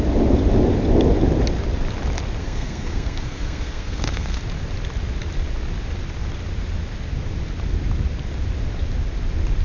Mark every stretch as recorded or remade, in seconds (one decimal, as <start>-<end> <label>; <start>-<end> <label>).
0.0-2.4 recorded; 2.4-4.4 remade; 4.4-9.6 recorded